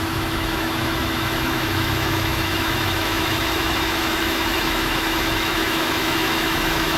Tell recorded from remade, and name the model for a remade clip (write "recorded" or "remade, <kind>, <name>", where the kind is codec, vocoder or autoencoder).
remade, autoencoder, DAC-VAE